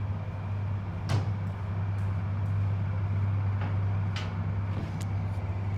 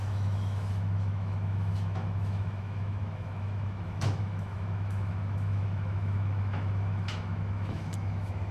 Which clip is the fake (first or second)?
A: second